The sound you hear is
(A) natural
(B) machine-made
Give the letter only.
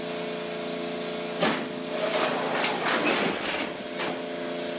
A